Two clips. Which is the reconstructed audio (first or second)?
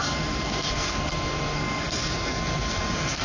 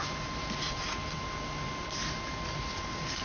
first